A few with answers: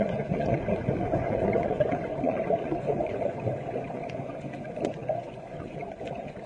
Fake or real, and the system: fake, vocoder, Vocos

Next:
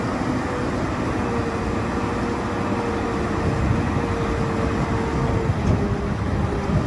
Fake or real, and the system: real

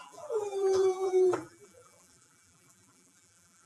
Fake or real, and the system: fake, vocoder, BigVGAN v2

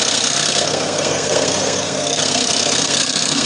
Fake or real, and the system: fake, codec, SNAC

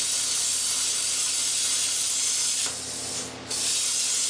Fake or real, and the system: real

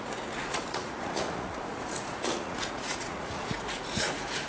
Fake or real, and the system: fake, vocoder, Vocos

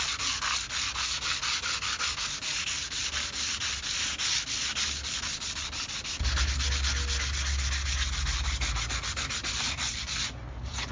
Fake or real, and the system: real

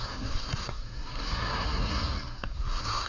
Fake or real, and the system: fake, codec, SNAC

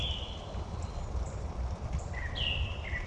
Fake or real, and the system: real